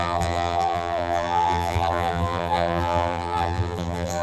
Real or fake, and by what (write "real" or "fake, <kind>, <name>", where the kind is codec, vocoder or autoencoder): fake, vocoder, BigVGAN v2